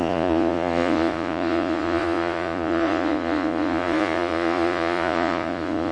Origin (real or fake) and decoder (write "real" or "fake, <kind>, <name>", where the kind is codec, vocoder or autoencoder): fake, vocoder, Vocos